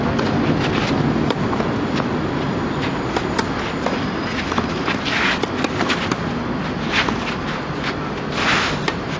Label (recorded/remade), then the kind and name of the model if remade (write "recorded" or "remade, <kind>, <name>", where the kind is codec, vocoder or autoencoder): recorded